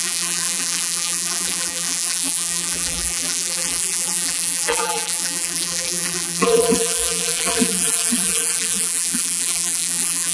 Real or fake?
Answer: fake